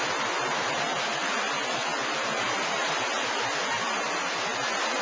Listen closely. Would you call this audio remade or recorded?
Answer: recorded